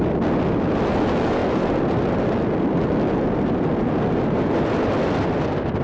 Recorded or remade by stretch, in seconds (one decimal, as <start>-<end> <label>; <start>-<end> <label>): 0.0-5.8 recorded